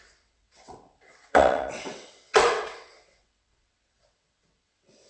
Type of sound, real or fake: fake